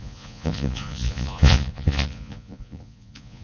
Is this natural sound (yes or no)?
no